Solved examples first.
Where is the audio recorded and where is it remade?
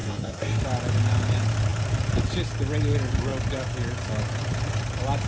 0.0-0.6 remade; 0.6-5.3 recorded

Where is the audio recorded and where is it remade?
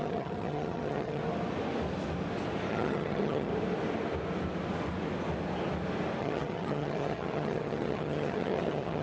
0.0-1.2 remade; 1.2-2.7 recorded; 2.7-3.5 remade; 3.5-6.2 recorded; 6.2-9.0 remade